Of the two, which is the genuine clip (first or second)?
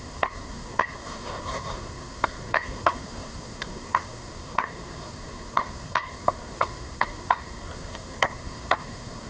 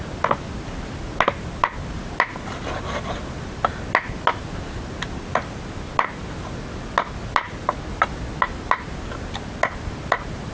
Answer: second